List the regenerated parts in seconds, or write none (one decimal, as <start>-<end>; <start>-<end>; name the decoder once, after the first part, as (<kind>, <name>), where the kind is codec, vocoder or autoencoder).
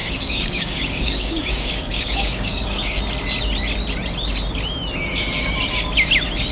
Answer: 0.0-3.0 (codec, DAC)